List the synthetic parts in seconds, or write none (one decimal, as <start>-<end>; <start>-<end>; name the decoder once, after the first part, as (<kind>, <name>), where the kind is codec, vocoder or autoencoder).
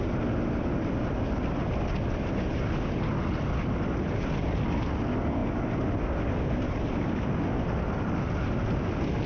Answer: none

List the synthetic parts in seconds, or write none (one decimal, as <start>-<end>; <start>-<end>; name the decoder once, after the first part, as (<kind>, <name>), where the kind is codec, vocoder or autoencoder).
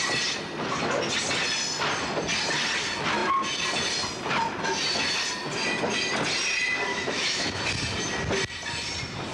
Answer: 6.9-7.6 (autoencoder, DAC-VAE)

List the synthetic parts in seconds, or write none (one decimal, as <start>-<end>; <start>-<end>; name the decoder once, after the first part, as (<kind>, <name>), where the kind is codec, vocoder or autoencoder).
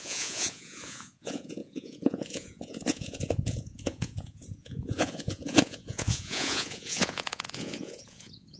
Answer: 0.0-8.6 (vocoder, Vocos)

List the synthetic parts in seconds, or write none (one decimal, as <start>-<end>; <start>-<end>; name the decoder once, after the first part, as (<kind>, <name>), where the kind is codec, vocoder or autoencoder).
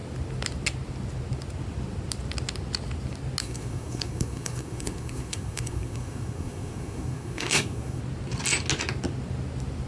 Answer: 3.4-8.0 (codec, SNAC)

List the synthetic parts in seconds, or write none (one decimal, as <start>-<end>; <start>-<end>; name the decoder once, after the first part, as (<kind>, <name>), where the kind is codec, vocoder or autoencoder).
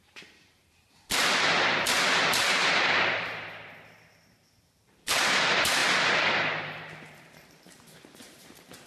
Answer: 0.0-1.2 (vocoder, BigVGAN v2); 2.4-5.8; 6.6-8.9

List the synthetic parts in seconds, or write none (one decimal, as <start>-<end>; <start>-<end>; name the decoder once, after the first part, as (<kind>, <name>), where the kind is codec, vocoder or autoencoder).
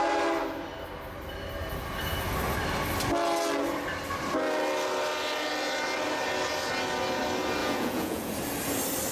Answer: 7.6-8.3 (vocoder, Vocos)